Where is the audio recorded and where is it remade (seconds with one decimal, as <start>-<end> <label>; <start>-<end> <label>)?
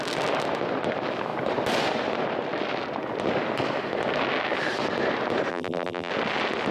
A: 0.0-5.5 recorded; 5.5-6.1 remade; 6.1-6.7 recorded